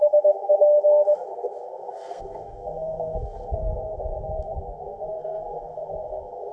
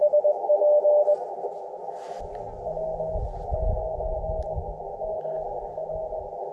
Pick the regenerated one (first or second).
first